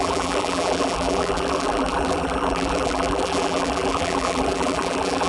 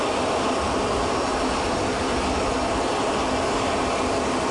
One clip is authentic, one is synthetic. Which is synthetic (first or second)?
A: first